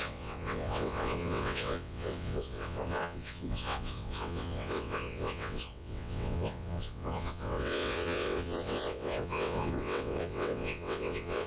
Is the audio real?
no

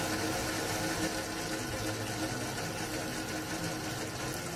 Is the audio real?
yes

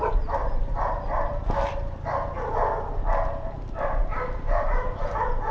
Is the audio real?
yes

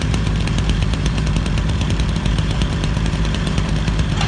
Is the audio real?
no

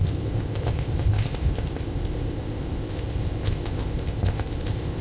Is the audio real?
no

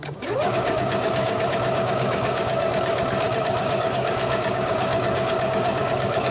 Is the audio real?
no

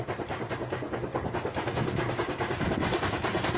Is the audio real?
yes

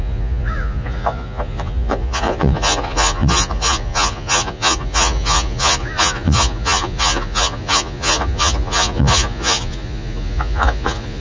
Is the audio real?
no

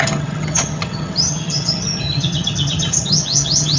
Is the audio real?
no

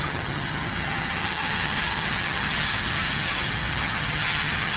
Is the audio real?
no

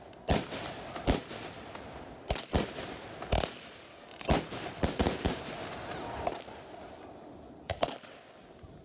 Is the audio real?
yes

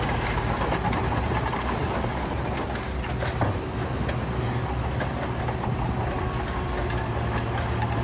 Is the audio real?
yes